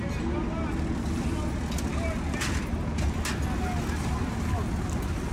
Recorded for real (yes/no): yes